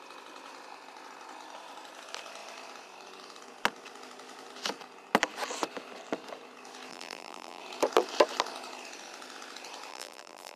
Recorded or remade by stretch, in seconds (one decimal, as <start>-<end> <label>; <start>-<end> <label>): 0.0-6.9 recorded; 6.9-7.6 remade; 7.6-9.9 recorded; 9.9-10.6 remade